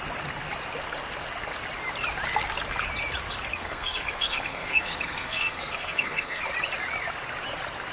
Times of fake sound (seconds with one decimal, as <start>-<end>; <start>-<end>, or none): 3.5-6.4